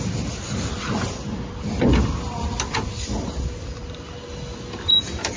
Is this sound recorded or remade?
recorded